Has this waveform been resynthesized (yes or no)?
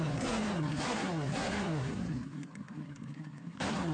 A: yes